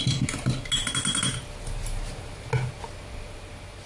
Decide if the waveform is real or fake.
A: real